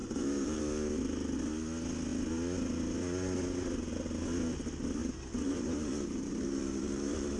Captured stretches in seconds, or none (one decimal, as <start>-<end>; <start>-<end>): 0.6-5.0

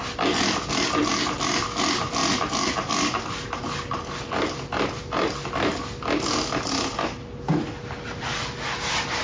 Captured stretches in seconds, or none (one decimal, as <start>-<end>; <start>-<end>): 0.0-9.2

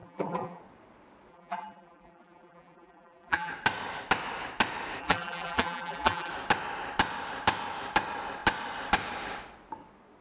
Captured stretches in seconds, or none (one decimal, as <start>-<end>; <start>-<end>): 0.6-1.3; 3.5-5.0; 6.3-10.2

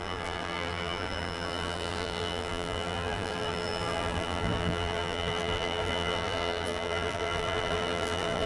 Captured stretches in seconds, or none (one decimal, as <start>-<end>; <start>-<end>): none

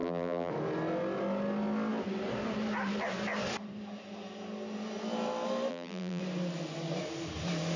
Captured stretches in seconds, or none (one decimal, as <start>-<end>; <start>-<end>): 0.5-5.7; 6.2-7.8

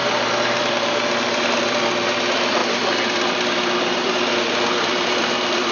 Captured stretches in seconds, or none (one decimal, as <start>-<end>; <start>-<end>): 0.0-0.6

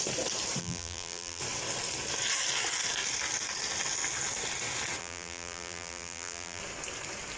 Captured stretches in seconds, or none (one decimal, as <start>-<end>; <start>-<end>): 0.0-0.6; 1.4-5.0; 6.6-7.4